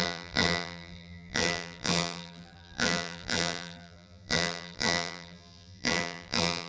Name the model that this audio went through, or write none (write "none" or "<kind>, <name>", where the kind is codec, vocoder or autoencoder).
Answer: vocoder, BigVGAN v2